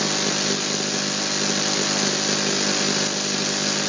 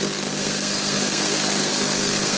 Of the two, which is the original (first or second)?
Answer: first